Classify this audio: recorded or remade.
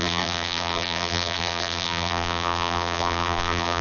remade